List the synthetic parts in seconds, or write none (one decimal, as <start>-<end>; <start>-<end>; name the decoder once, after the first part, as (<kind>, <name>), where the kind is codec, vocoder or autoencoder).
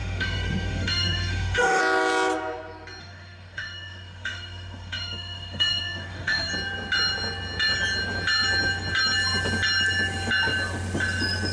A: 0.0-1.8 (autoencoder, DAC-VAE); 3.0-6.5